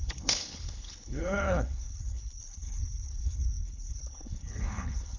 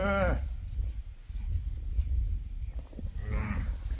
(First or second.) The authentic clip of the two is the second